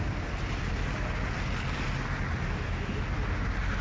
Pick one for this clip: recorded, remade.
recorded